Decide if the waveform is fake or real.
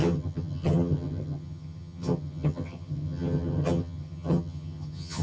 fake